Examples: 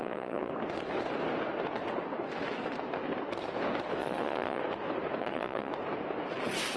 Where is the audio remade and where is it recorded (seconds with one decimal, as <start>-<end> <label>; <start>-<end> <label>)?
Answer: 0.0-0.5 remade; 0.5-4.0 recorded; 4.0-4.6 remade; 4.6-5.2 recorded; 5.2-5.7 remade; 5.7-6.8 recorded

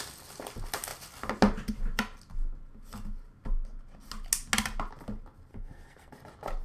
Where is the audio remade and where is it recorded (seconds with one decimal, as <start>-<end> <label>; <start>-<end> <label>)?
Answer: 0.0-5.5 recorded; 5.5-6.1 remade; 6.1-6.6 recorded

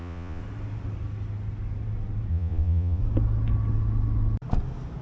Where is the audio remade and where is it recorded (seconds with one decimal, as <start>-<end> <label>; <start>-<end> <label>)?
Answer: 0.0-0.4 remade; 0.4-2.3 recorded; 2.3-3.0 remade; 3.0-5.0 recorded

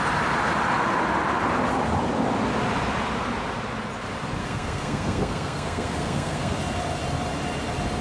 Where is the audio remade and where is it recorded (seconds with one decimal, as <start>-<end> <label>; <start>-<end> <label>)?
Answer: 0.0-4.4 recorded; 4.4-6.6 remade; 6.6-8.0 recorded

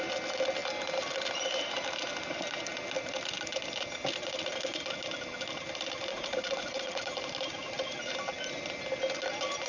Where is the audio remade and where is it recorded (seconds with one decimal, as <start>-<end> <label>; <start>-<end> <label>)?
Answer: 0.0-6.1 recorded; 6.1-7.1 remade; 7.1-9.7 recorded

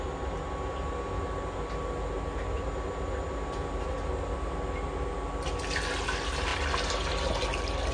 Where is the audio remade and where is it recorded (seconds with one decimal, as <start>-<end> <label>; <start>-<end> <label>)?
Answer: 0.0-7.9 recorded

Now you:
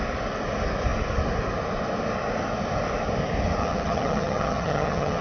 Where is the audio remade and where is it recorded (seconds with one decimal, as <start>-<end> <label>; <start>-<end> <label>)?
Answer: 0.0-3.6 recorded; 3.6-5.2 remade

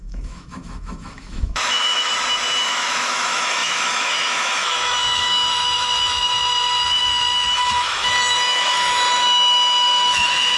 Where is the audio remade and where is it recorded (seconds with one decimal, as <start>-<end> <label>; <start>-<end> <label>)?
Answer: 0.0-2.1 remade; 2.1-2.6 recorded; 2.6-10.6 remade